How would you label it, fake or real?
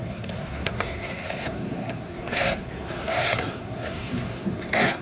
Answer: fake